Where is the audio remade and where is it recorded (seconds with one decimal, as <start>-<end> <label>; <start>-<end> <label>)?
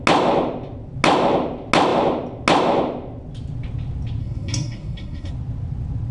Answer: 0.0-4.2 recorded; 4.2-5.3 remade; 5.3-6.1 recorded